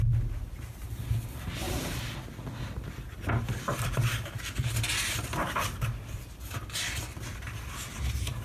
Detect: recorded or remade recorded